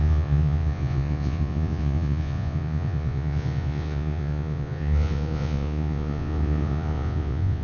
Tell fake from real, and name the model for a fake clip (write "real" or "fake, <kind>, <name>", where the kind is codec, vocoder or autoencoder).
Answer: fake, vocoder, Vocos